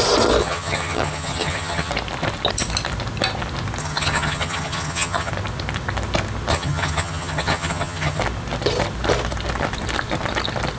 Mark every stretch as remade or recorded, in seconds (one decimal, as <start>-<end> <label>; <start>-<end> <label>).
0.0-0.4 recorded; 0.4-1.9 remade; 1.9-3.8 recorded; 3.8-5.3 remade; 5.3-6.5 recorded; 6.5-8.2 remade; 8.2-10.8 recorded